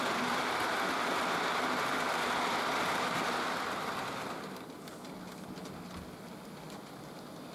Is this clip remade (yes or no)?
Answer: no